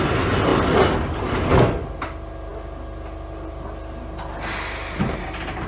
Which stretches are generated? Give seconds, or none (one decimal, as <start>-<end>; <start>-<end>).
none